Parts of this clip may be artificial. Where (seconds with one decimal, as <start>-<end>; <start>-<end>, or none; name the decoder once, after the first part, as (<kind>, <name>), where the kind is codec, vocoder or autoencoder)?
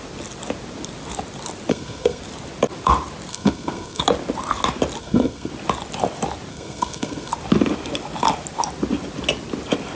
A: 1.7-2.2 (codec, SNAC); 3.3-4.0; 5.0-5.5; 6.5-7.3